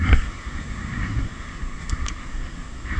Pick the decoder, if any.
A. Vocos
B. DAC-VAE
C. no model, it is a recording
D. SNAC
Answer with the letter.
D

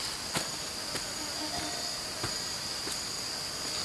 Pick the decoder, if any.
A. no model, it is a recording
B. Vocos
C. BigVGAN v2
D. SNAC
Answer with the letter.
A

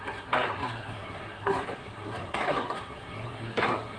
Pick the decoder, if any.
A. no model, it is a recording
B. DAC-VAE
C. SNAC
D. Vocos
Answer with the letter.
C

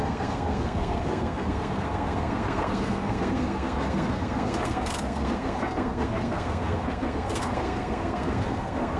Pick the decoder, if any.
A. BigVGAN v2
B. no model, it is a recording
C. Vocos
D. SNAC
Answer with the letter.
D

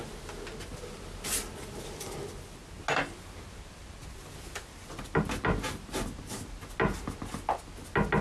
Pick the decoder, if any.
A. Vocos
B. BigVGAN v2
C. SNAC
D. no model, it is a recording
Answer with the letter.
D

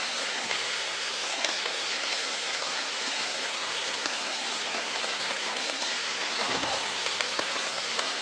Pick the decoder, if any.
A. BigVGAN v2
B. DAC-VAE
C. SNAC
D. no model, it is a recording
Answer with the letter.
C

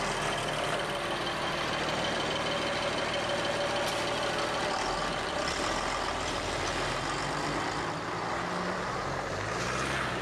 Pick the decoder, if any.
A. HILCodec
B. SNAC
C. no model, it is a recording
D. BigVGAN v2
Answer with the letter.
C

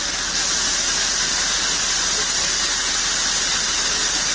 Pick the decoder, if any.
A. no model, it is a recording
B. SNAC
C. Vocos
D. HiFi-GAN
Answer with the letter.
A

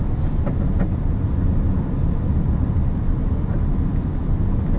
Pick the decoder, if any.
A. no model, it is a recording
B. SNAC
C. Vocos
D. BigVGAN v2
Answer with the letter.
A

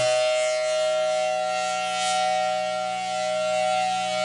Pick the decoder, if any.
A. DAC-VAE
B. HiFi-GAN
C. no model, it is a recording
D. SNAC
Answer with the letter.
C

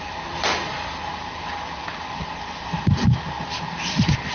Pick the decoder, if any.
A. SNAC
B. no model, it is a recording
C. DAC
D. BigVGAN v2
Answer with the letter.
B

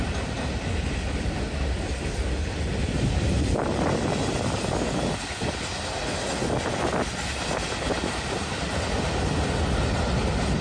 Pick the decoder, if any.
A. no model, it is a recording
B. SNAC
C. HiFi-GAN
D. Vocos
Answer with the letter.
A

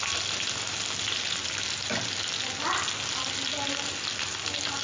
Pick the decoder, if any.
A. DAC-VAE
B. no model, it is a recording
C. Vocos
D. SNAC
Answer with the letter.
B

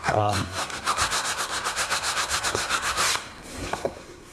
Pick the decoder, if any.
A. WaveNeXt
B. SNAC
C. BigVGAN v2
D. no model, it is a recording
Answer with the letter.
B